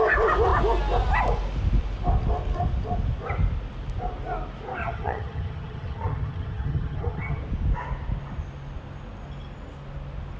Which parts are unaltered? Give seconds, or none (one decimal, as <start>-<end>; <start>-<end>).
0.0-4.8; 7.4-10.4